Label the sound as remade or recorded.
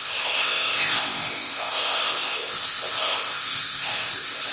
remade